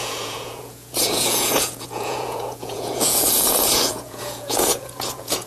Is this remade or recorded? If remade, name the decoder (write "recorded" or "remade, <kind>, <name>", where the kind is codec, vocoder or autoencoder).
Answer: remade, vocoder, Vocos